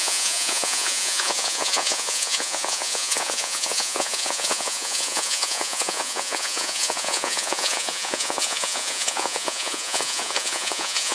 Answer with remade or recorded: remade